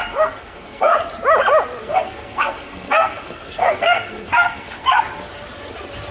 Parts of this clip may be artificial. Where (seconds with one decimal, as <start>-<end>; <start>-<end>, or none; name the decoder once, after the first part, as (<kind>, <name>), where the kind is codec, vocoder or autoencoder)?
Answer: 0.0-0.9 (codec, SNAC); 1.8-5.0